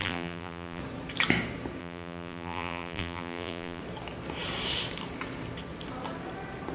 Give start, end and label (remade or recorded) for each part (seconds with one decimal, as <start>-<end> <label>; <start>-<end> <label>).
0.0-0.8 remade; 0.8-1.8 recorded; 1.8-3.8 remade; 3.8-6.7 recorded